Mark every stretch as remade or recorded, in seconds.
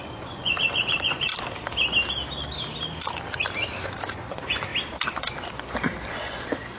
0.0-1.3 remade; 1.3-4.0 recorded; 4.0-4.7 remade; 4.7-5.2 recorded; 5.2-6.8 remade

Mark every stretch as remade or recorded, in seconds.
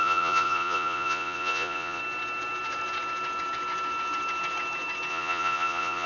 0.0-2.0 remade; 2.0-5.1 recorded; 5.1-6.1 remade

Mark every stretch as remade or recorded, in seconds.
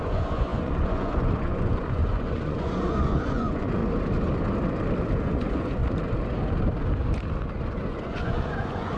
0.0-3.8 remade; 3.8-5.2 recorded; 5.2-5.8 remade; 5.8-7.8 recorded; 7.8-9.0 remade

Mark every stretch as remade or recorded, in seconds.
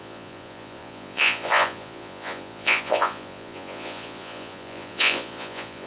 0.0-5.9 remade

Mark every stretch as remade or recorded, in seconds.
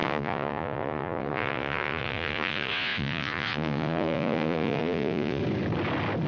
0.0-5.4 remade; 5.4-6.3 recorded